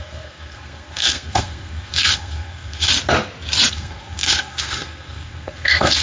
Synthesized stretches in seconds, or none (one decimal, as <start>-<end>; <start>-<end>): 0.0-2.9; 3.7-6.0